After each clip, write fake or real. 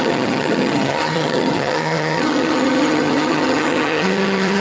fake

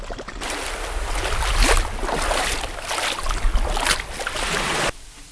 real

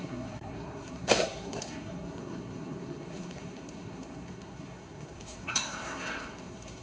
fake